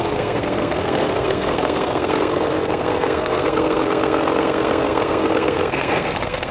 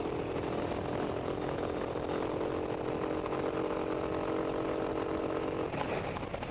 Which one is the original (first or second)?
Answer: second